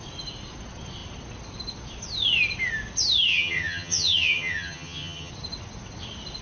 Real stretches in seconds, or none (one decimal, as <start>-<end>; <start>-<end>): 0.0-3.3; 5.3-6.4